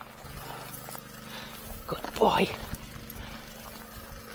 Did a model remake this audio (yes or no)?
no